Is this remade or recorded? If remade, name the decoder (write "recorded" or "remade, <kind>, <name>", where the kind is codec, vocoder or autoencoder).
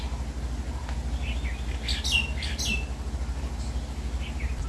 recorded